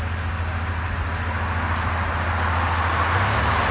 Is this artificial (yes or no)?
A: no